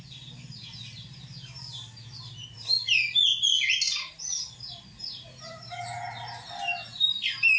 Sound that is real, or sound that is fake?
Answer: real